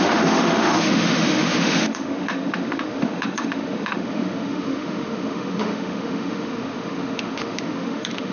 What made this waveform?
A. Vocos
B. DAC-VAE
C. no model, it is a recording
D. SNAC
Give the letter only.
B